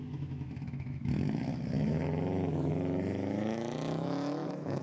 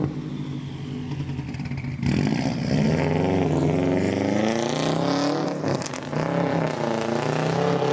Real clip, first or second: second